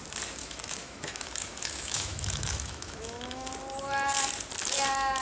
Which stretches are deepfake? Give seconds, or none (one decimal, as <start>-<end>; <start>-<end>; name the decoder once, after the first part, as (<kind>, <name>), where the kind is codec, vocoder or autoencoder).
0.4-3.5 (autoencoder, DAC-VAE)